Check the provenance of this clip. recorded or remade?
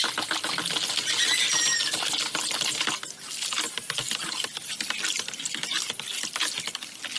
recorded